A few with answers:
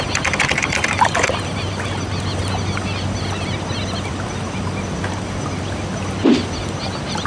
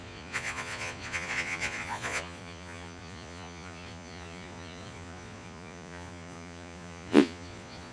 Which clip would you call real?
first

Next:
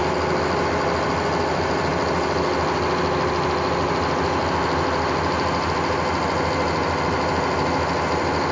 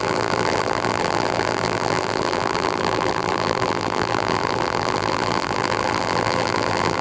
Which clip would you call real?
first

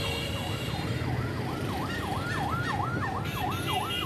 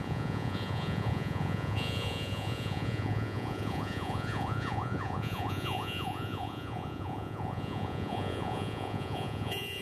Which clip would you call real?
first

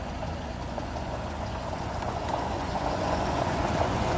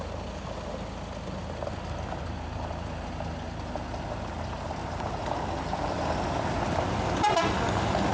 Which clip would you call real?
second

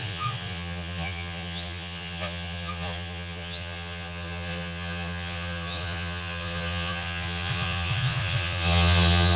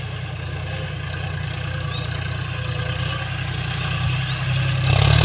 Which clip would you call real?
second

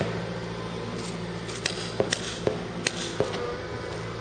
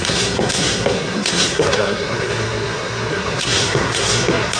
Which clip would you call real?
first